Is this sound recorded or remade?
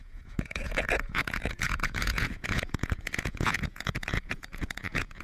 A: remade